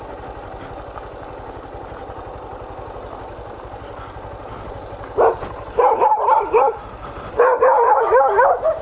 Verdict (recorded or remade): recorded